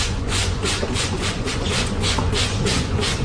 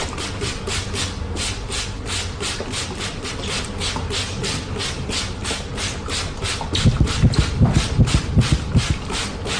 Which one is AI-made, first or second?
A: first